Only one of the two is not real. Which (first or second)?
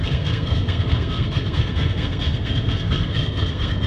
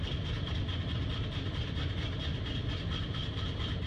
first